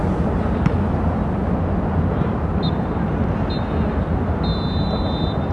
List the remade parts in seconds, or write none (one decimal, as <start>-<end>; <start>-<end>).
none